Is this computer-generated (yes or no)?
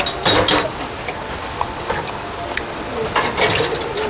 no